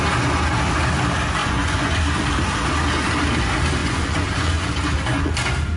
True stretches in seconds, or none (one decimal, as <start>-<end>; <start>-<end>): 0.0-1.4; 2.0-3.8; 5.3-5.8